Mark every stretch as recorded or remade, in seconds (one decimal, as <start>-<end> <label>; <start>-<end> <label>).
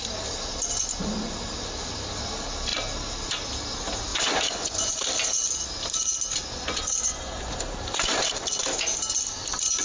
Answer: 0.0-4.1 recorded; 4.1-4.9 remade; 4.9-6.4 recorded; 6.4-7.6 remade; 7.6-9.8 recorded